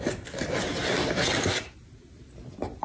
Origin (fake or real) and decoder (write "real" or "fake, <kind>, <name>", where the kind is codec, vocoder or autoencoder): real